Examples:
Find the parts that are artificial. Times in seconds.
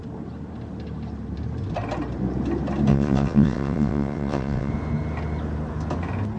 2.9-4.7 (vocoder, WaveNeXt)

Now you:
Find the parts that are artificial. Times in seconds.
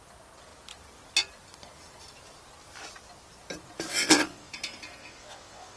3.9-4.5 (vocoder, WaveNeXt); 5.0-5.8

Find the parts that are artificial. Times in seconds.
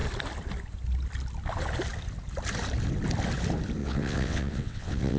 3.8-5.2 (vocoder, WaveNeXt)